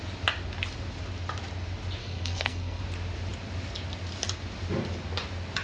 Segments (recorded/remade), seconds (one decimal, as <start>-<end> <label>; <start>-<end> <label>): 0.0-2.0 recorded; 2.0-2.8 remade; 2.8-5.6 recorded